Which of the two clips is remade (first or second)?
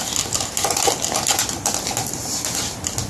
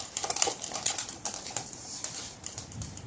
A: second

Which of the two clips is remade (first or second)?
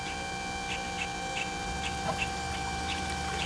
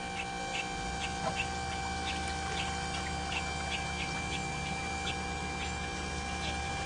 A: first